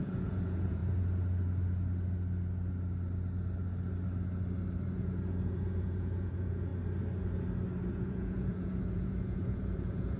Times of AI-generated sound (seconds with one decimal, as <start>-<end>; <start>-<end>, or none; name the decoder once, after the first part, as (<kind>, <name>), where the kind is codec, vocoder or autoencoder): 0.0-0.8 (vocoder, Vocos); 5.0-6.7; 7.9-10.2